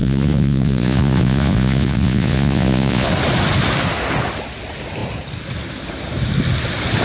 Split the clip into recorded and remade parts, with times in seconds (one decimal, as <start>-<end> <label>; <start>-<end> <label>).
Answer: 0.0-3.1 remade; 3.1-7.0 recorded